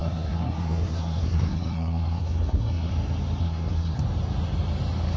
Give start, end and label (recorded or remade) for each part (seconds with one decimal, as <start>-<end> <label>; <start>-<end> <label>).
0.0-2.9 remade; 2.9-3.4 recorded; 3.4-4.0 remade; 4.0-5.2 recorded